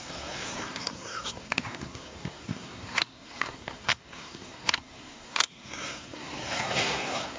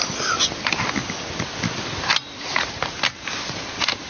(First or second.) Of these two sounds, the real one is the second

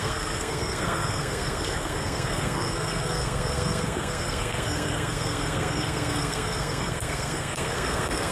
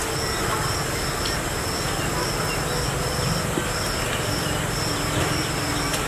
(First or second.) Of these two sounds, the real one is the second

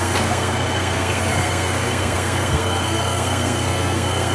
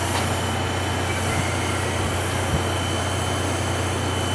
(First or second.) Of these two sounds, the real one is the second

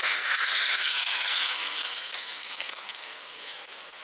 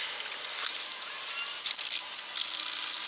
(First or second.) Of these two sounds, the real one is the second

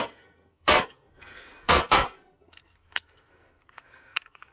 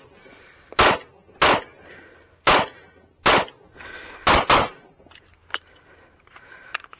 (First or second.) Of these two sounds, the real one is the second